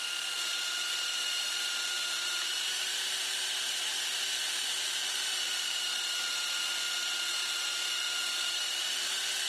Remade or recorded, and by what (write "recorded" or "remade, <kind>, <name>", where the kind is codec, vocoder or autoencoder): remade, vocoder, BigVGAN v2